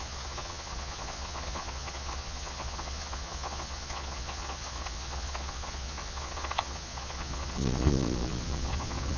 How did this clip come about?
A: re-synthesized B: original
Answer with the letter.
A